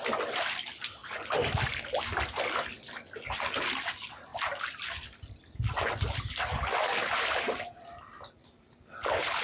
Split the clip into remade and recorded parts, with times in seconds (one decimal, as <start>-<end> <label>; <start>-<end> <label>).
0.0-9.4 recorded